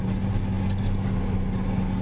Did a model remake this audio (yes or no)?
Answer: no